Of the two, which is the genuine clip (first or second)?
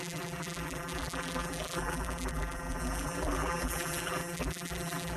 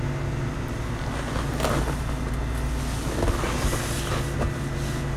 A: second